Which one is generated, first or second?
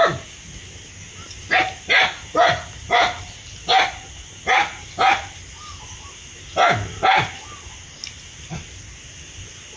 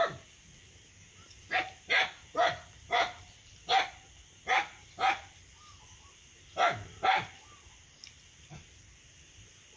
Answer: second